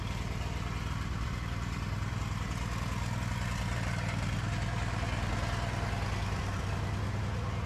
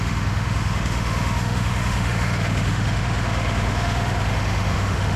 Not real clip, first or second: second